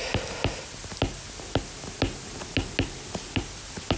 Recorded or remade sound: recorded